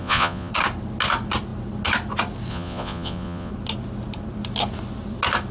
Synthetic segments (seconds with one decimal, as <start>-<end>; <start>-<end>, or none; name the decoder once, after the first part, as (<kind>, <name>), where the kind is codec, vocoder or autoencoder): 0.0-0.5 (vocoder, Vocos); 2.5-3.5